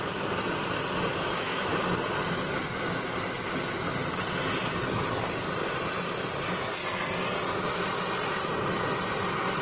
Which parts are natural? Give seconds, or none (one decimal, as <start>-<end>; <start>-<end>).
0.0-1.1; 1.8-9.6